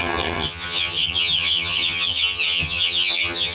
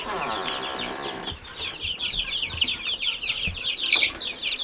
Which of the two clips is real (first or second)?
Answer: second